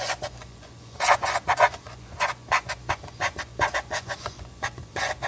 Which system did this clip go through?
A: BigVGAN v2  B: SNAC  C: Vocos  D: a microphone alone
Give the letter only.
C